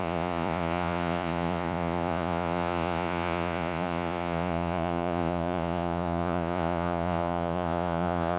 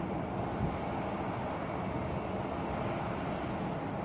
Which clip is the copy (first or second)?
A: first